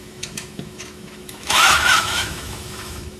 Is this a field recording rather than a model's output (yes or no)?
no